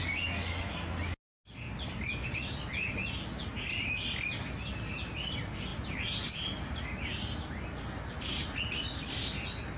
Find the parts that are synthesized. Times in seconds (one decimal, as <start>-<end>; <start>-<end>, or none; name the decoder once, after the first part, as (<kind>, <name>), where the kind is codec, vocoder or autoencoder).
none